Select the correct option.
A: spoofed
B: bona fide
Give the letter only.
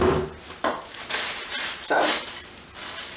B